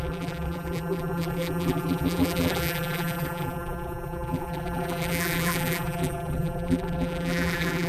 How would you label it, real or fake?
fake